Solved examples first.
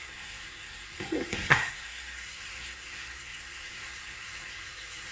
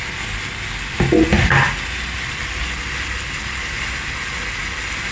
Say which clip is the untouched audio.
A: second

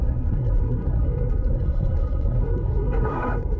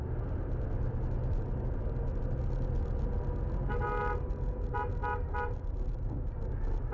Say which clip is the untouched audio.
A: second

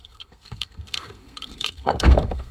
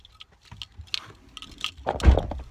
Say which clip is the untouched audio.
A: second